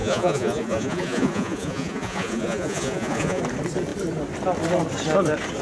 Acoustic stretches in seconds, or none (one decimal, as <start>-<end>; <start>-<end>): 3.4-5.6